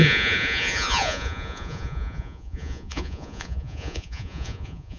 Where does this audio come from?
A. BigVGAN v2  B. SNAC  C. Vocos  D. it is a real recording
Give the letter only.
C